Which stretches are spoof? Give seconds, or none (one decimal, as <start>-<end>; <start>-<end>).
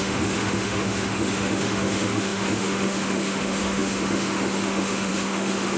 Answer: 0.0-5.8